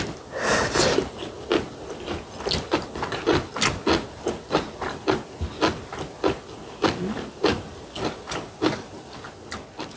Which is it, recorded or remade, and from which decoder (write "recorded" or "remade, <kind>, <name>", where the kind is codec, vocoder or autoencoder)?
recorded